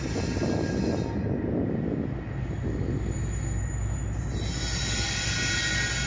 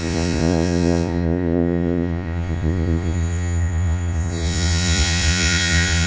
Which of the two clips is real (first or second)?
first